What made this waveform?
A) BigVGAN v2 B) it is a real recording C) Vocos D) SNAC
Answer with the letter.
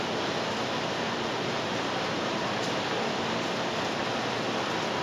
A